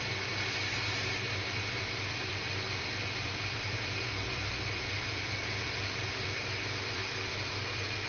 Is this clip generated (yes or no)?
yes